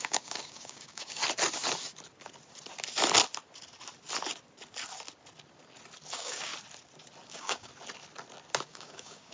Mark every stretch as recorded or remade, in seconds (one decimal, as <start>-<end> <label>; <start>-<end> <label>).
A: 0.0-1.2 remade; 1.2-6.1 recorded; 6.1-6.5 remade; 6.5-7.3 recorded; 7.3-7.7 remade; 7.7-8.7 recorded; 8.7-9.3 remade